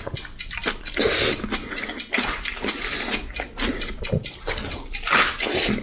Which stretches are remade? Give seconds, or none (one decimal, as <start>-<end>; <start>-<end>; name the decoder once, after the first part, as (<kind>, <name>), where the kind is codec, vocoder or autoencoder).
none